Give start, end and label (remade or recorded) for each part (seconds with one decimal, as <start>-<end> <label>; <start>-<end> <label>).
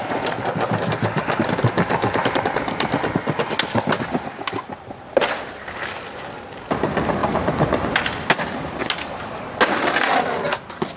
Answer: 0.0-11.0 recorded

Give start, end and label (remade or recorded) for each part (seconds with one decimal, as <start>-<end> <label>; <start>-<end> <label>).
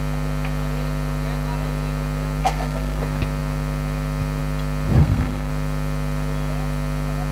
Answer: 0.0-2.4 recorded; 2.4-3.0 remade; 3.0-5.0 recorded; 5.0-5.5 remade; 5.5-7.3 recorded